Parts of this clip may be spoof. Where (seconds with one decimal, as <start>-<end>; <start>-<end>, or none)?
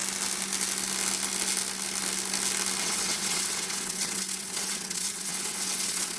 2.8-6.2